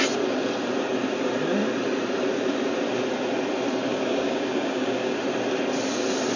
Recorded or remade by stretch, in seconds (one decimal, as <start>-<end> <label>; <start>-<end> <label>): 0.0-3.9 recorded; 3.9-5.2 remade; 5.2-6.4 recorded